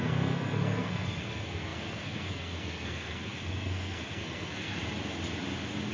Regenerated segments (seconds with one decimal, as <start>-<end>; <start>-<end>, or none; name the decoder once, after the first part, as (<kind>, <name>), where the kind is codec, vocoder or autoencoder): 0.0-4.8 (codec, SNAC)